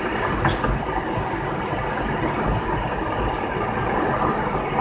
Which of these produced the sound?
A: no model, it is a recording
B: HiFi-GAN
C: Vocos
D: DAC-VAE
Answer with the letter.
A